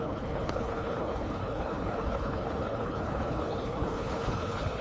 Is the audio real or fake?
fake